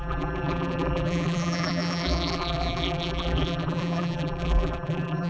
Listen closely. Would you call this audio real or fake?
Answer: fake